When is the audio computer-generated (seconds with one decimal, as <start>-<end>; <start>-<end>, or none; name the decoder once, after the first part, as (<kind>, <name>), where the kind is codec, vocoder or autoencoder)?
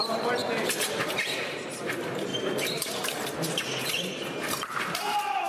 0.0-0.4 (vocoder, BigVGAN v2); 1.0-5.5